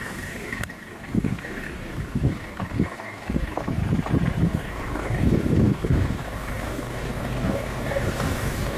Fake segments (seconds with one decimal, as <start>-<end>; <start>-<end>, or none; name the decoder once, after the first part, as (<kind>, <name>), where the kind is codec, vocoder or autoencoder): 0.0-3.8 (codec, DAC); 4.4-8.8